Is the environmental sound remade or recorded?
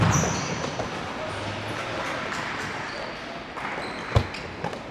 recorded